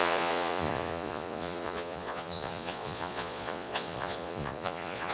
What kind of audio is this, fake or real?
fake